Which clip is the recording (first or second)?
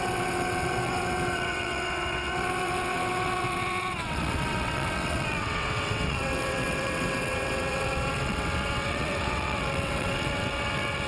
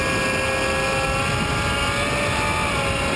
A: second